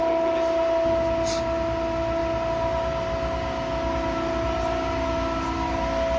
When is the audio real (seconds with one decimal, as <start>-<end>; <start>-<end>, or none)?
0.0-6.2